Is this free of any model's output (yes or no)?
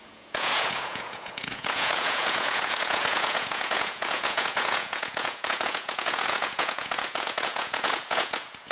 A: no